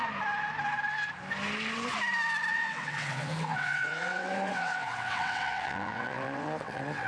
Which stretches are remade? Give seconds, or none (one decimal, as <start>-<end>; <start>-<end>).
2.5-7.1